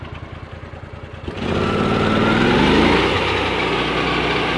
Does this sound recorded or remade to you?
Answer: recorded